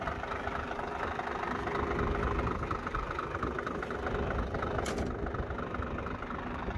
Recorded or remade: recorded